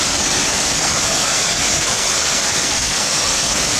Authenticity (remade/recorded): remade